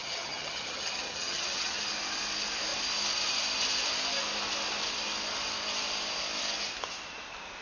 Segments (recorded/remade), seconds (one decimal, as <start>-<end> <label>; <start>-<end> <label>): 0.0-1.8 remade; 1.8-7.6 recorded

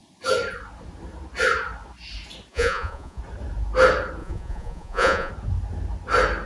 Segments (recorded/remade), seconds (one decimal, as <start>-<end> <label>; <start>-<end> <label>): 0.0-2.5 recorded; 2.5-3.2 remade; 3.2-4.2 recorded; 4.2-5.3 remade; 5.3-6.5 recorded